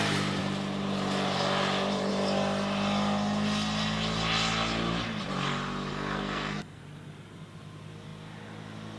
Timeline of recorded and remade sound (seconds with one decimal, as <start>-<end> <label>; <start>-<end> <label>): 0.0-5.9 recorded; 5.9-6.8 remade; 6.8-9.0 recorded